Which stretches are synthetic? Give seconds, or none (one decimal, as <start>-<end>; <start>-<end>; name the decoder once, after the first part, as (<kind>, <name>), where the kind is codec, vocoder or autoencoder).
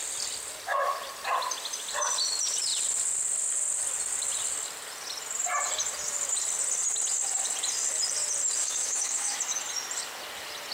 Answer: 8.6-9.4 (autoencoder, DAC-VAE)